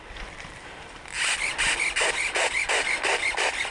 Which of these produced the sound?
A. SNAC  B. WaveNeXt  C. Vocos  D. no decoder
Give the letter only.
D